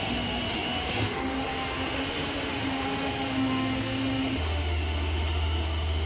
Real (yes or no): no